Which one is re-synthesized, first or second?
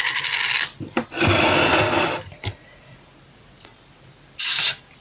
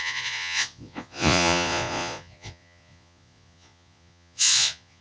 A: second